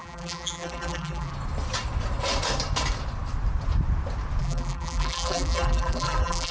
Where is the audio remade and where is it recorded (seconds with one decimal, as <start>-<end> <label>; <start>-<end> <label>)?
0.0-1.3 remade; 1.3-4.4 recorded; 4.4-6.5 remade